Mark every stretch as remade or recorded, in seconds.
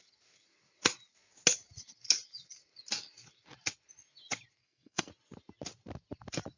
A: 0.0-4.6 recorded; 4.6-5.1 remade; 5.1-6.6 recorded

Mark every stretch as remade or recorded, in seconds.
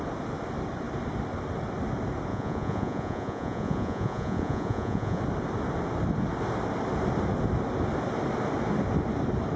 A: 0.0-2.3 recorded; 2.3-5.2 remade; 5.2-9.6 recorded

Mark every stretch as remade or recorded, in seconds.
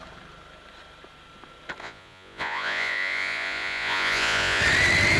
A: 0.0-1.8 recorded; 1.8-4.6 remade; 4.6-5.2 recorded